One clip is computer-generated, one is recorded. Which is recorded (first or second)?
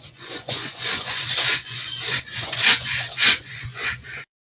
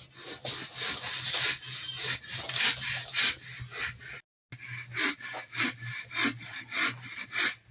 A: second